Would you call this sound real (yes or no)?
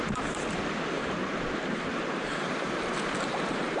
no